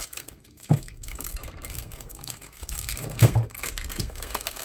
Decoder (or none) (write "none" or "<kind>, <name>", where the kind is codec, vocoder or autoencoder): codec, SNAC